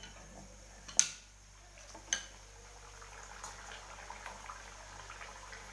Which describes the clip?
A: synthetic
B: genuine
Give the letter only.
B